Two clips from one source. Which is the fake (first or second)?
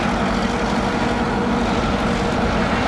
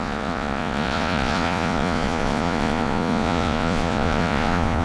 second